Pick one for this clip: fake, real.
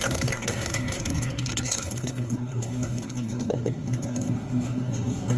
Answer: fake